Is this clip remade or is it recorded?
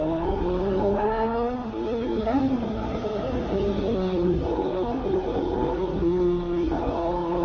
remade